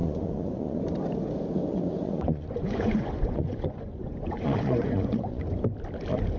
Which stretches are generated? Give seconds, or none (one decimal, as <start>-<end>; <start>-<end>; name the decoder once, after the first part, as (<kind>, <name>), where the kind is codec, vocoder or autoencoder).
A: 0.0-0.8 (vocoder, Vocos); 1.7-5.4